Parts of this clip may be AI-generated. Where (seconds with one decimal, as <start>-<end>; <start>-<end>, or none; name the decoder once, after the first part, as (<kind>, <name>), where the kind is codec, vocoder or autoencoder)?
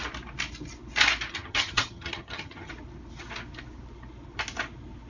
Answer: 1.3-2.7 (vocoder, HiFi-GAN)